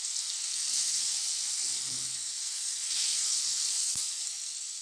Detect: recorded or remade remade